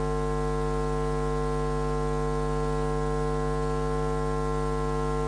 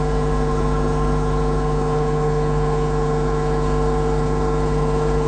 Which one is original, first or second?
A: first